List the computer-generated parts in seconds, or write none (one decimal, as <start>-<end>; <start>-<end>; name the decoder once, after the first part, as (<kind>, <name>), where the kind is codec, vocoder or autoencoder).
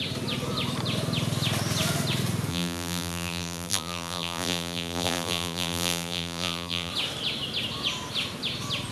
2.5-6.9 (vocoder, BigVGAN v2)